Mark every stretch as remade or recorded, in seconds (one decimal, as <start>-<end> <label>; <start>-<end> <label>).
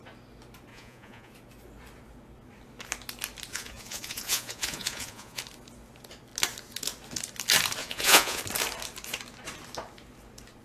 0.0-0.7 recorded; 0.7-1.3 remade; 1.3-3.5 recorded; 3.5-5.4 remade; 5.4-7.8 recorded; 7.8-8.4 remade; 8.4-10.6 recorded